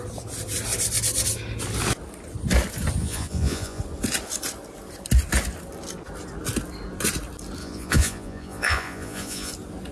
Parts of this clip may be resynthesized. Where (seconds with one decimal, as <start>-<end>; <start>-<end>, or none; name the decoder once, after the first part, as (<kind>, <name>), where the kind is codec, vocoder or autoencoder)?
3.0-3.8 (vocoder, Vocos); 7.6-9.5